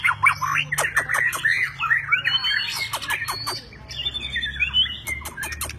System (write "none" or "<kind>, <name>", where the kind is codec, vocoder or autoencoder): none